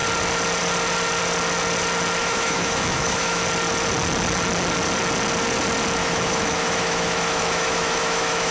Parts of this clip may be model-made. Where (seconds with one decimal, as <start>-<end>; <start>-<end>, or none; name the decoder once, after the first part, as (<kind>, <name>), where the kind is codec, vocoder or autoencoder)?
2.2-3.4 (autoencoder, DAC-VAE); 6.0-8.5